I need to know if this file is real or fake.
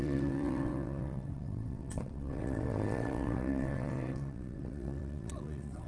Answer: fake